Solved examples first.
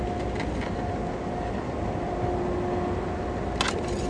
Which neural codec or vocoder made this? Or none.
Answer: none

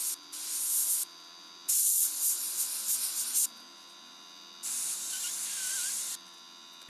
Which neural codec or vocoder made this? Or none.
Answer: none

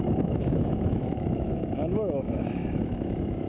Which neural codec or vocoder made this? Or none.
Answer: autoencoder, DAC-VAE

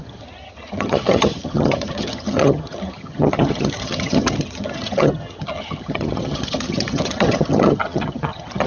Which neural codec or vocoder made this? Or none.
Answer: vocoder, HiFi-GAN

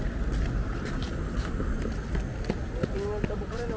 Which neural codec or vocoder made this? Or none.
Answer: none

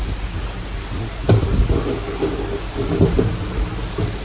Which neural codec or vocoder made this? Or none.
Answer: none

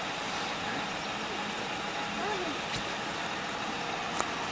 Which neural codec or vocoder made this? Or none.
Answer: none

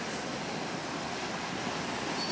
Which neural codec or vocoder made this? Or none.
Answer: none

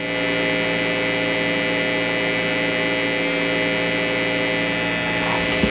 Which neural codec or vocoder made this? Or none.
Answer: none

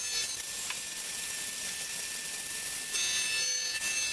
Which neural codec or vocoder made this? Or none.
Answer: none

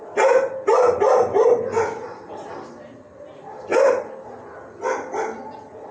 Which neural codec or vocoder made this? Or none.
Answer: none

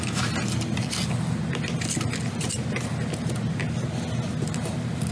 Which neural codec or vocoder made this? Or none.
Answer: none